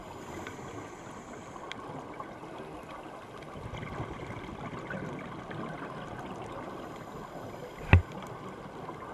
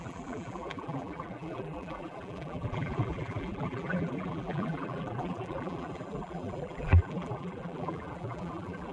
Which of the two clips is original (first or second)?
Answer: first